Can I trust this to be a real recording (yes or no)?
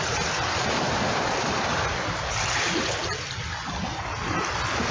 yes